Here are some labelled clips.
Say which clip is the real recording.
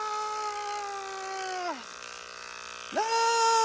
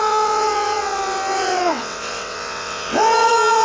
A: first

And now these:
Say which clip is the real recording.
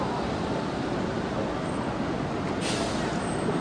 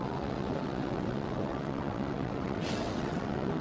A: first